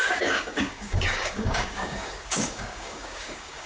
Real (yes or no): no